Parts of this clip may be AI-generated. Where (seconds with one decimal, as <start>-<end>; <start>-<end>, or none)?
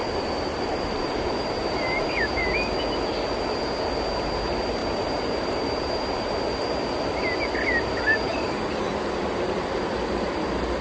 0.0-2.4; 4.8-6.4